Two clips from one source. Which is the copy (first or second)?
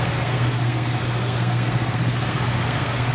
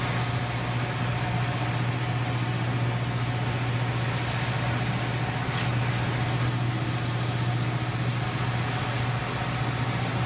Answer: first